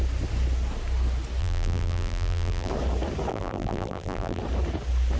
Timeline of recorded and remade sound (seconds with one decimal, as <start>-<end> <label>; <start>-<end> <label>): 0.0-1.4 recorded; 1.4-2.7 remade; 2.7-3.3 recorded; 3.3-4.4 remade; 4.4-5.2 recorded